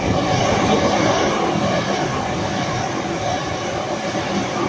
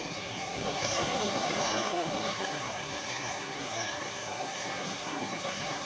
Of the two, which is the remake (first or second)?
second